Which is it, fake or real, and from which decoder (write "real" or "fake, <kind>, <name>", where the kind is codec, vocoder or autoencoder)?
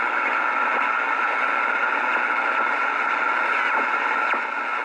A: real